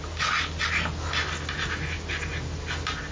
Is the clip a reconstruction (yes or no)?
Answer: no